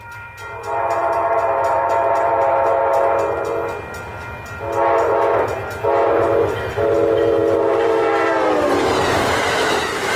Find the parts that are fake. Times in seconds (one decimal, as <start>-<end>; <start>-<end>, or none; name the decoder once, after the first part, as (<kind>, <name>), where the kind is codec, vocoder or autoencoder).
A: 0.0-2.9 (vocoder, BigVGAN v2); 6.7-10.2